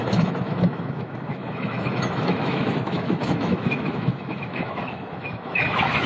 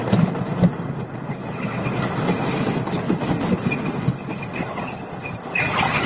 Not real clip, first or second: first